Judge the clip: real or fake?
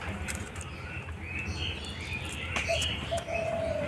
real